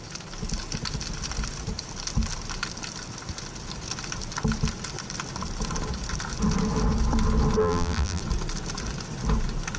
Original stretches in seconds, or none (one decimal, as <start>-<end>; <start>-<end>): 0.0-7.6; 8.2-9.8